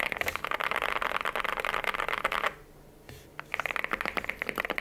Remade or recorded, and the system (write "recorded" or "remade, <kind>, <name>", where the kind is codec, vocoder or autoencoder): recorded